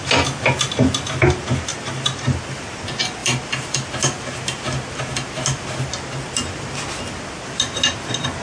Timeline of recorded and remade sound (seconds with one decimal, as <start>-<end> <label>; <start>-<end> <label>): 0.0-1.7 recorded; 1.7-2.4 remade; 2.4-3.2 recorded; 3.2-3.9 remade; 3.9-8.4 recorded